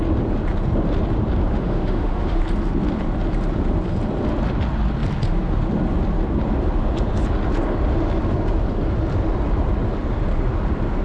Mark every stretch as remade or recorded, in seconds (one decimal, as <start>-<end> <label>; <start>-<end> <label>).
0.0-1.5 recorded; 1.5-2.4 remade; 2.4-11.0 recorded